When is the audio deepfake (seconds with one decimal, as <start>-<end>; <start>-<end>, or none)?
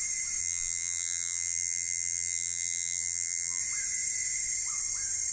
0.4-3.6